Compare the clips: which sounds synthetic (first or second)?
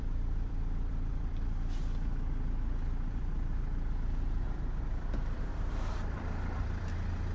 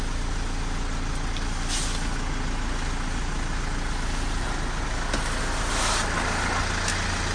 first